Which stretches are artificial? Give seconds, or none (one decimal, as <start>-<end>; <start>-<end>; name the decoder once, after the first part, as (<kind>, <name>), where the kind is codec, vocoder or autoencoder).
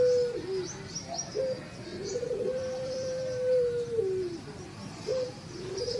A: 1.9-5.4 (vocoder, BigVGAN v2)